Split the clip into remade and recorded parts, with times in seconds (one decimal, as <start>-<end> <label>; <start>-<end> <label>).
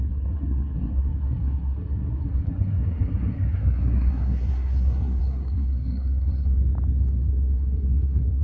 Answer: 0.0-6.6 remade; 6.6-7.3 recorded; 7.3-8.4 remade